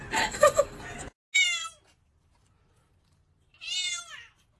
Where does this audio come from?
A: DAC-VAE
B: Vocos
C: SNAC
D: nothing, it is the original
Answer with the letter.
D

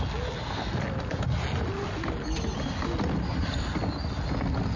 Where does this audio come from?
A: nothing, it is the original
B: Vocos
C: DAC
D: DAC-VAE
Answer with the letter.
A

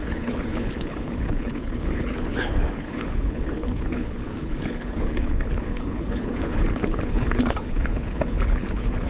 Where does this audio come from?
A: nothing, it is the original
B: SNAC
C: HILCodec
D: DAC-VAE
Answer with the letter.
C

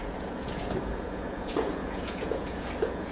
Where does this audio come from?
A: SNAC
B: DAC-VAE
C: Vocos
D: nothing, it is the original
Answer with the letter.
C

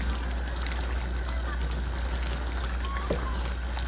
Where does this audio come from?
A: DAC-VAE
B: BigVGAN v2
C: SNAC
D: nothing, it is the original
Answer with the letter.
D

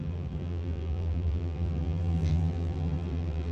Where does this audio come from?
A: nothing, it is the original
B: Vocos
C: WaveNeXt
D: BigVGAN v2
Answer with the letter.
D